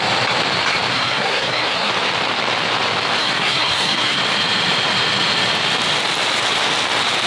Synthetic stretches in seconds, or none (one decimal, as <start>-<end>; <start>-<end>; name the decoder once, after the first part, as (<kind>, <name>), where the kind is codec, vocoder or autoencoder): 0.9-1.9 (codec, SNAC); 3.2-4.2

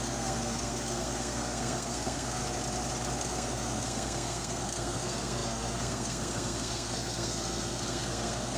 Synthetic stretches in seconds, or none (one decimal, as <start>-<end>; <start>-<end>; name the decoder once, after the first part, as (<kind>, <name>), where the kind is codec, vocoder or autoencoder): 0.0-2.4 (codec, SNAC); 3.2-8.6

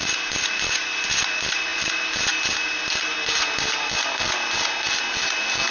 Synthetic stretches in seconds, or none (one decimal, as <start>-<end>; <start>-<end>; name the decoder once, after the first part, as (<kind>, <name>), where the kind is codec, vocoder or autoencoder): none

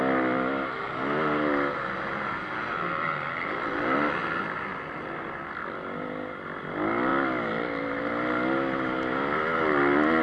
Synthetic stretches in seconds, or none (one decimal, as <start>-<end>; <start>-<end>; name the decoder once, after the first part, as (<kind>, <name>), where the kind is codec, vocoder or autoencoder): none